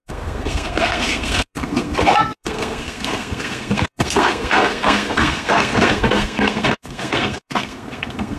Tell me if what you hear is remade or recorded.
remade